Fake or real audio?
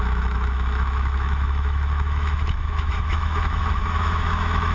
fake